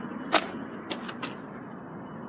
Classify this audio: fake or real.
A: real